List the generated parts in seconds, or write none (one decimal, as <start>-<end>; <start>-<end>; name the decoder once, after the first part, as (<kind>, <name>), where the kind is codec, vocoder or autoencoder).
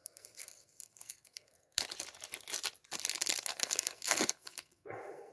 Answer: 0.0-1.8 (codec, SNAC); 3.5-5.3